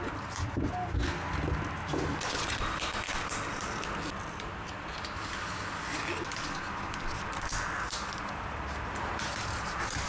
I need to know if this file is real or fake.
real